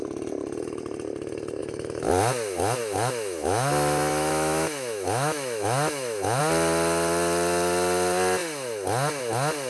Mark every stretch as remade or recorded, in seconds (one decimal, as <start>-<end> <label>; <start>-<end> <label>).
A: 0.0-1.6 recorded; 1.6-2.1 remade; 2.1-2.8 recorded; 2.8-6.4 remade; 6.4-9.7 recorded

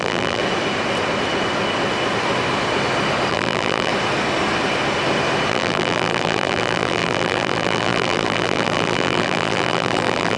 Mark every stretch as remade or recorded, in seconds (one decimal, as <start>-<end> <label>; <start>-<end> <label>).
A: 0.0-0.4 remade; 0.4-3.3 recorded; 3.3-3.9 remade; 3.9-5.5 recorded; 5.5-10.4 remade

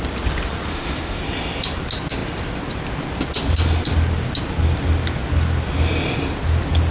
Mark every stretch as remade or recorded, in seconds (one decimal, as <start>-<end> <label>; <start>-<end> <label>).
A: 0.0-0.7 recorded; 0.7-1.2 remade; 1.2-6.9 recorded

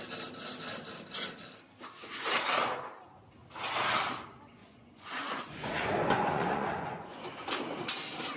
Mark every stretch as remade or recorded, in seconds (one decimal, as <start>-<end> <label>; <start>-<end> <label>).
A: 0.0-4.6 recorded; 4.6-7.5 remade; 7.5-8.4 recorded

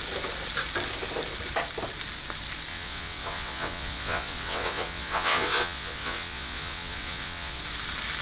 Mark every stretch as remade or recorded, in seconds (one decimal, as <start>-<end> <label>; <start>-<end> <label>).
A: 0.0-2.7 recorded; 2.7-7.6 remade; 7.6-8.2 recorded

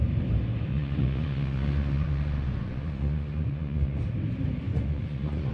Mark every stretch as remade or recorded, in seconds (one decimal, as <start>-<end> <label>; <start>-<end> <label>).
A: 0.0-0.7 recorded; 0.7-4.0 remade; 4.0-4.7 recorded; 4.7-5.5 remade

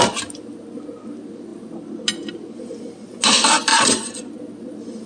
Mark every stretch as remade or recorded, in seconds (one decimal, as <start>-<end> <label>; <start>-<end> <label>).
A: 0.0-3.7 recorded; 3.7-4.3 remade; 4.3-5.1 recorded

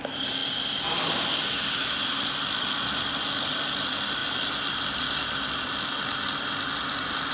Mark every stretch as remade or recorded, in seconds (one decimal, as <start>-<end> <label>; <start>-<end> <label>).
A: 0.0-7.3 recorded